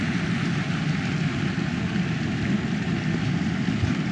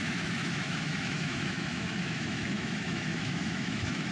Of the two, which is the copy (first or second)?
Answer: second